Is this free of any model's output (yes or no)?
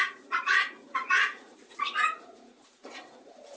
no